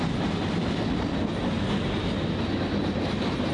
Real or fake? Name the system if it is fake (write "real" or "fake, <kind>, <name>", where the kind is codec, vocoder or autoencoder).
real